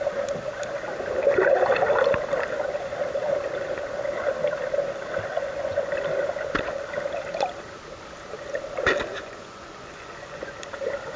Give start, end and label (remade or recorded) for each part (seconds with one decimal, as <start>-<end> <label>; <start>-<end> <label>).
0.0-5.3 recorded; 5.3-5.9 remade; 5.9-9.2 recorded; 9.2-10.7 remade; 10.7-11.2 recorded